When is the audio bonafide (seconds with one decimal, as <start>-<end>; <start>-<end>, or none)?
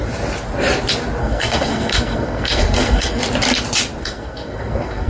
0.0-1.2; 3.2-4.0